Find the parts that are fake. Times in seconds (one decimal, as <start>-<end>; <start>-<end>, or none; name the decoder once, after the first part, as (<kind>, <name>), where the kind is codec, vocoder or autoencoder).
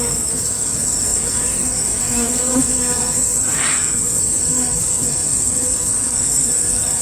0.0-7.0 (codec, SNAC)